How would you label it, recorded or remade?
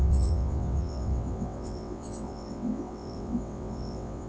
remade